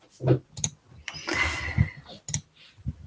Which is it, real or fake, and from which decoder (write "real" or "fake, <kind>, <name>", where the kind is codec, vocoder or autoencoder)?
real